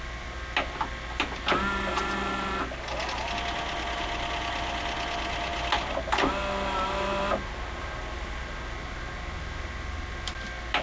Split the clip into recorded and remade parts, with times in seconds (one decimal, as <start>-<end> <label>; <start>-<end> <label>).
0.0-10.8 recorded